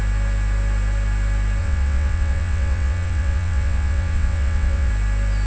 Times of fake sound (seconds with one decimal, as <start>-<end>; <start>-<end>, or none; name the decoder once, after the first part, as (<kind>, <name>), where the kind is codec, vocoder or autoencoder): 1.6-4.9 (vocoder, WaveNeXt)

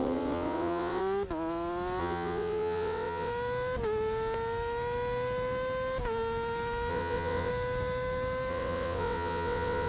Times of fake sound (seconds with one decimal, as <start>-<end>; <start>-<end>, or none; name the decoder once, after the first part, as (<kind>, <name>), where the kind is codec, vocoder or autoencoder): 0.0-1.0 (vocoder, WaveNeXt); 2.0-3.3; 6.9-7.5; 8.5-9.9

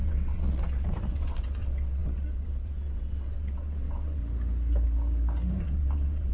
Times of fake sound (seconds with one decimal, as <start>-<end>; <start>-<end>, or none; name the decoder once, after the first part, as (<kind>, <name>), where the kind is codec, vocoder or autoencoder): 0.0-4.2 (vocoder, WaveNeXt); 5.6-6.3

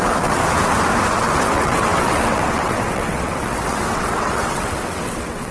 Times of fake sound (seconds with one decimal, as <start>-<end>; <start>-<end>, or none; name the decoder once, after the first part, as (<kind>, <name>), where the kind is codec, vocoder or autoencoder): 0.0-0.4 (vocoder, WaveNeXt); 1.1-5.5

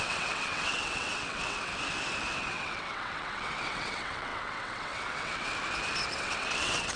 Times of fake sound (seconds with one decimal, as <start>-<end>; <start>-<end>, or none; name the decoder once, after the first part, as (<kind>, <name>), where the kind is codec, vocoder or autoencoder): 0.0-1.7 (vocoder, WaveNeXt); 2.4-5.5; 6.2-7.0

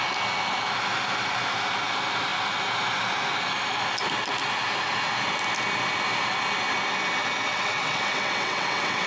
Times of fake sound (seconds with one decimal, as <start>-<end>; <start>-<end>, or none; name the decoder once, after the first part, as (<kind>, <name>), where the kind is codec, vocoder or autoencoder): 7.5-9.1 (vocoder, WaveNeXt)

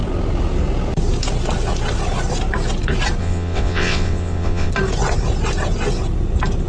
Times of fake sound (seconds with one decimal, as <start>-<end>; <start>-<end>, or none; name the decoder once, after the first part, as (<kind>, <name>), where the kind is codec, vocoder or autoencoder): 3.2-4.7 (vocoder, WaveNeXt)

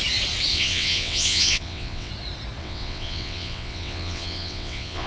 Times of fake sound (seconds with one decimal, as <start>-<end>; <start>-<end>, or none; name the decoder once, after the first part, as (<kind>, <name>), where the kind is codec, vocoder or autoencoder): 0.5-2.1 (vocoder, WaveNeXt); 2.6-5.1